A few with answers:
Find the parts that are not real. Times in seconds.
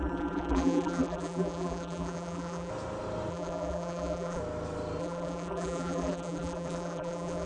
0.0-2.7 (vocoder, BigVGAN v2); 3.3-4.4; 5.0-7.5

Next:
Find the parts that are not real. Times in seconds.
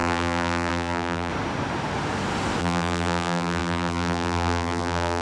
0.0-1.3 (vocoder, BigVGAN v2); 2.6-5.2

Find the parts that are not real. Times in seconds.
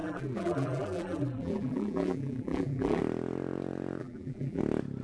0.0-3.0 (vocoder, BigVGAN v2); 4.0-4.6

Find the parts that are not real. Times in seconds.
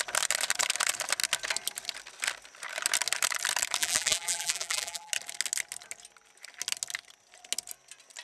3.8-5.1 (vocoder, BigVGAN v2)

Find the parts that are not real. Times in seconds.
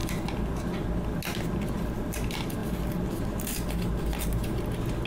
none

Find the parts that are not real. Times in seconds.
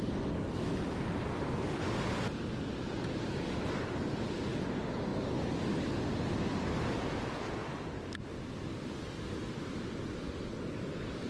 5.1-5.7 (vocoder, BigVGAN v2); 7.6-8.8